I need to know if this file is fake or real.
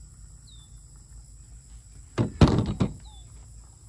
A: real